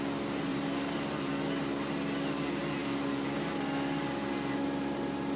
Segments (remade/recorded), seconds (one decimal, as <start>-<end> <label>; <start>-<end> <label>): 0.0-0.5 recorded; 0.5-1.3 remade; 1.3-5.4 recorded